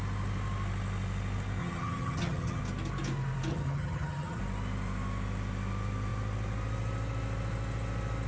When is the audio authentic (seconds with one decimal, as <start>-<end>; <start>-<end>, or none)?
0.0-1.6; 2.6-3.5; 4.4-8.3